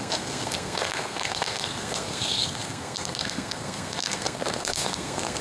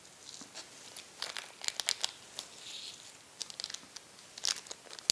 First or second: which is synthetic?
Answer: first